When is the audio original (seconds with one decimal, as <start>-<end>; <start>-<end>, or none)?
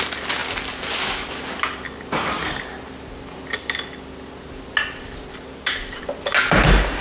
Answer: 0.0-7.0